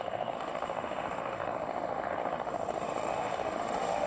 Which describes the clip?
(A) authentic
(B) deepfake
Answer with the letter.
B